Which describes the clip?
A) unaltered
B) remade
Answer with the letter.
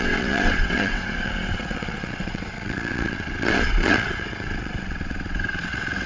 B